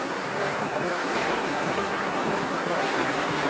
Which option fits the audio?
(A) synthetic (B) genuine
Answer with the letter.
A